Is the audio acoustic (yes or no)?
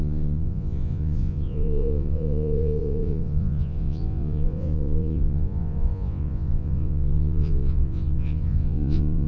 no